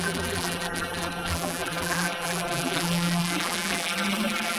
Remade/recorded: remade